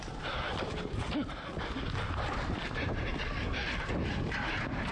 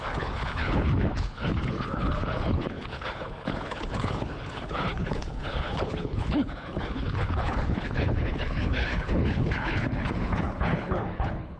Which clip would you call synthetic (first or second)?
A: second